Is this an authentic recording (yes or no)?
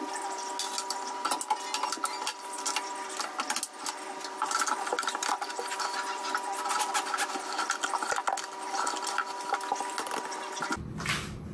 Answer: yes